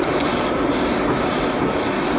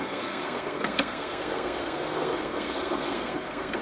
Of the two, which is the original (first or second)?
first